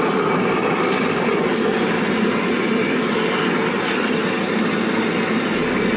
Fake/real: real